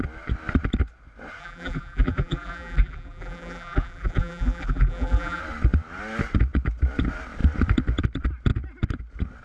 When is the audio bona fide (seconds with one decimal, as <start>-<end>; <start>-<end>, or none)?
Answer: 0.0-1.4; 5.4-9.4